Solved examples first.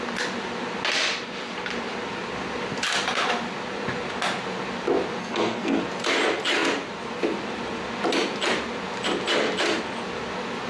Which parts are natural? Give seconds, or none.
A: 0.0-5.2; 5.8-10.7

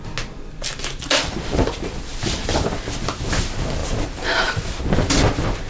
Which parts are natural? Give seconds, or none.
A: 0.0-5.7